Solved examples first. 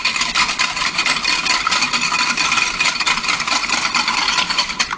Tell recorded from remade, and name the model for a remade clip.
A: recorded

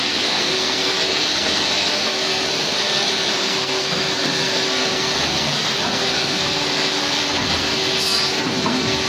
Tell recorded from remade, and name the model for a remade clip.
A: remade, codec, SNAC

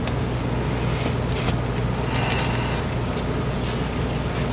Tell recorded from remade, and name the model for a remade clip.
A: recorded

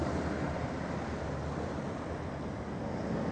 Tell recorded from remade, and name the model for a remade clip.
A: recorded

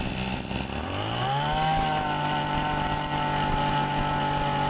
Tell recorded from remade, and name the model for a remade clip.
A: recorded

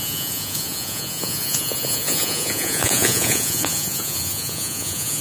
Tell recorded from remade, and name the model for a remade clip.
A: remade, vocoder, Vocos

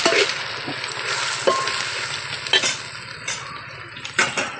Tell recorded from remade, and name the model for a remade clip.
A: recorded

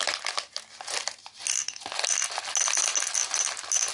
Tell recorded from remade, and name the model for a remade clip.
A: recorded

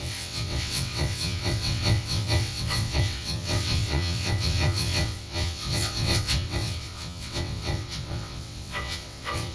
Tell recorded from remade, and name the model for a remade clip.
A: remade, vocoder, WaveNeXt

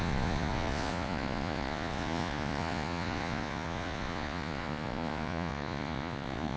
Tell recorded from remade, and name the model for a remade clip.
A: remade, vocoder, Vocos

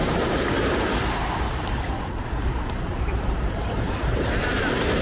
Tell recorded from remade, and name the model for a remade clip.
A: remade, vocoder, BigVGAN v2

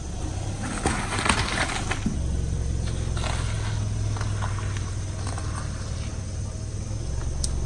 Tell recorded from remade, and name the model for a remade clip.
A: recorded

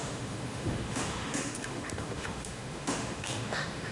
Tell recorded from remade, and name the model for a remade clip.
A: remade, autoencoder, DAC-VAE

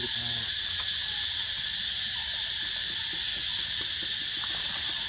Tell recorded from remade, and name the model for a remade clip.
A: recorded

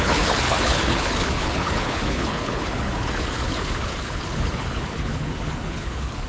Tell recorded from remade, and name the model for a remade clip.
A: remade, codec, HILCodec